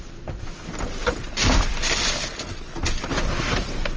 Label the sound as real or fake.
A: real